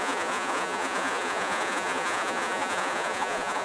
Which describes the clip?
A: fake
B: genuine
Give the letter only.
A